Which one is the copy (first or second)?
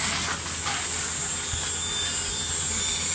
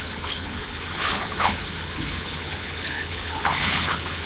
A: second